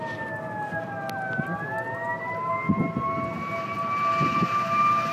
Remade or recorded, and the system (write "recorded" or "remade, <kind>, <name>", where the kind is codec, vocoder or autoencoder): recorded